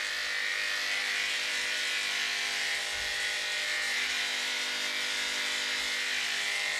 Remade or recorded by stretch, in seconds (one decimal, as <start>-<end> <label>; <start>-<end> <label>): 0.0-6.8 recorded